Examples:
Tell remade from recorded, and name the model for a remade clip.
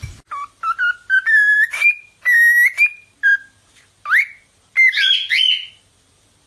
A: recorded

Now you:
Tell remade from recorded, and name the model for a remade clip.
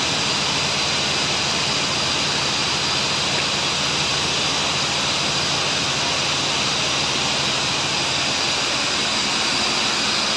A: recorded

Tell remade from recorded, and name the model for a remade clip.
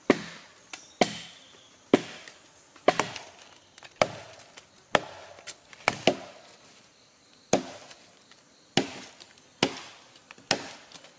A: recorded